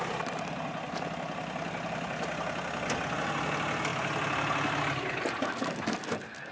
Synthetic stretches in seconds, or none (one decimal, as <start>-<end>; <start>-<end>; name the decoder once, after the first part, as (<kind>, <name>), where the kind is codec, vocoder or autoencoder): none